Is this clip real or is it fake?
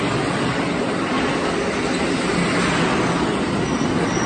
real